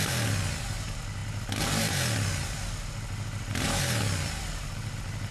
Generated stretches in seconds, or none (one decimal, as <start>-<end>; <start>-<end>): none